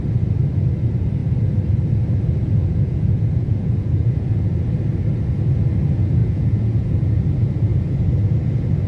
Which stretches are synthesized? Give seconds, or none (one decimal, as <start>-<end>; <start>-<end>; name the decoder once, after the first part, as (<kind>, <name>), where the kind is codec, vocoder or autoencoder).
2.6-4.5 (vocoder, Vocos); 6.2-7.1